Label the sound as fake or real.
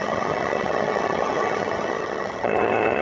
fake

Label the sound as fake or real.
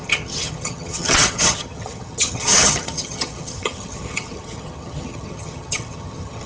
fake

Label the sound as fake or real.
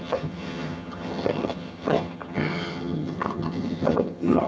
fake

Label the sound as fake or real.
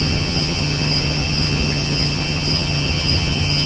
fake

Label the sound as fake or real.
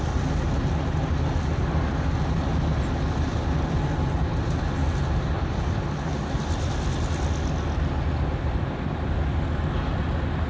real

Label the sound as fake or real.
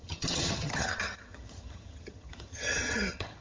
fake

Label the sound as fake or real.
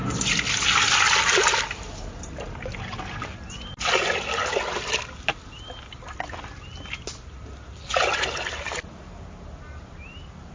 real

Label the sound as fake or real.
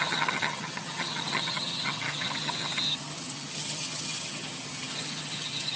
fake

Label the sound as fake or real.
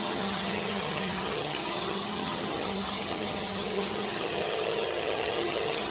fake